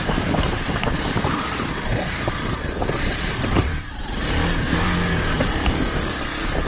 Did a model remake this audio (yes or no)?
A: yes